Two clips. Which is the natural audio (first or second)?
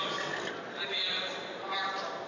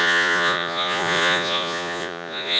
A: first